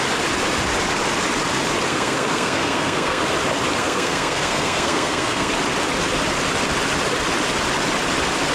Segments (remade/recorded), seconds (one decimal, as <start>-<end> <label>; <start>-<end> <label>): 0.0-1.9 recorded; 1.9-3.2 remade; 3.2-3.8 recorded; 3.8-5.5 remade; 5.5-8.5 recorded